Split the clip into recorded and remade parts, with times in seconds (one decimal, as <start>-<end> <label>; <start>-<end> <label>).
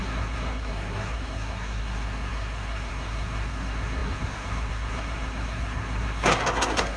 0.0-7.0 remade